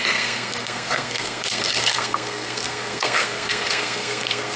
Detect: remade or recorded remade